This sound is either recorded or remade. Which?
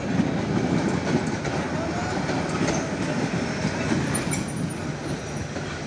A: recorded